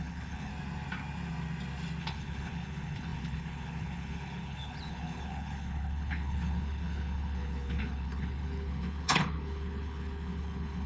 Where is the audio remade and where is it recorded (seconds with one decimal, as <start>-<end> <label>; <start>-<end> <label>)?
0.0-0.5 remade; 0.5-2.0 recorded; 2.0-10.9 remade